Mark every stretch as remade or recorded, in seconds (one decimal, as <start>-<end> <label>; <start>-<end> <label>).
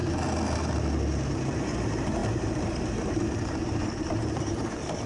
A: 0.0-1.4 recorded; 1.4-5.1 remade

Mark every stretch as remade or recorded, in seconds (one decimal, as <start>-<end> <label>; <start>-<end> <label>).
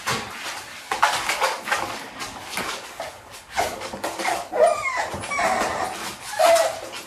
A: 0.0-0.7 recorded; 0.7-4.5 remade; 4.5-6.0 recorded; 6.0-6.5 remade; 6.5-7.1 recorded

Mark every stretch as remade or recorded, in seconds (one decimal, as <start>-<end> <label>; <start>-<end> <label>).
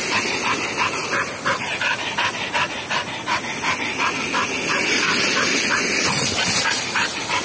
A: 0.0-7.4 recorded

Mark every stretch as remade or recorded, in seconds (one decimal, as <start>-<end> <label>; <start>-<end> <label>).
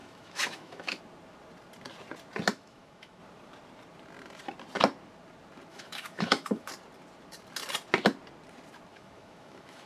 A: 0.0-1.0 remade; 1.0-2.5 recorded; 2.5-3.2 remade; 3.2-5.7 recorded; 5.7-6.7 remade; 6.7-8.9 recorded; 8.9-9.9 remade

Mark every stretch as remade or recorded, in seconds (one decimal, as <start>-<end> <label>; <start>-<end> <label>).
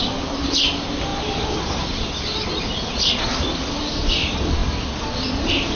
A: 0.0-5.8 recorded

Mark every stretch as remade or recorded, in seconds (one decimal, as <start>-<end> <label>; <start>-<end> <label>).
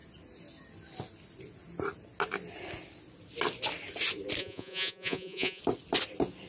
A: 0.0-4.4 recorded; 4.4-5.6 remade; 5.6-6.5 recorded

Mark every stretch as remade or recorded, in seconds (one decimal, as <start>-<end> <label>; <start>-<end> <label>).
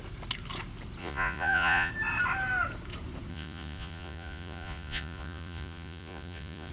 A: 0.0-1.0 recorded; 1.0-1.9 remade; 1.9-3.3 recorded; 3.3-6.7 remade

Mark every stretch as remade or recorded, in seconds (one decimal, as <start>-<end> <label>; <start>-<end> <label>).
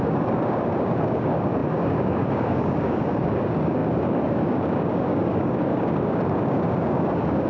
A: 0.0-7.5 remade